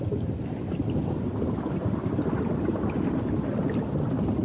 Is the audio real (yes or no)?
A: yes